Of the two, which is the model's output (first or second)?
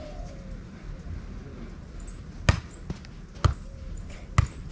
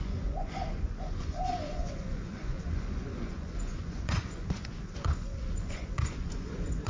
second